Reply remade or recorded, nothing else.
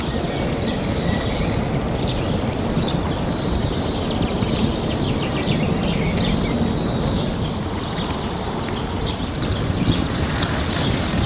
recorded